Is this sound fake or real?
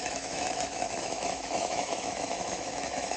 fake